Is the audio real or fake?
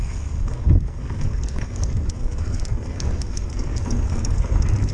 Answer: fake